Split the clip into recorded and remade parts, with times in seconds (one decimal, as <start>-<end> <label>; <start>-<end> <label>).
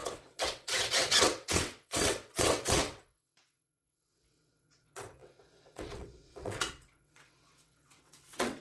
0.0-8.6 remade